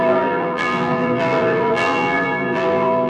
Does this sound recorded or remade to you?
remade